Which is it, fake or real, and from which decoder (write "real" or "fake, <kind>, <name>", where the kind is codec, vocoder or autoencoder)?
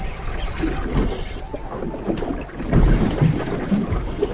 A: real